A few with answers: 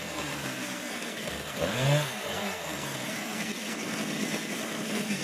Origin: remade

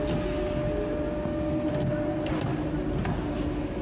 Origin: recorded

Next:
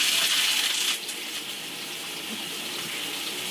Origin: remade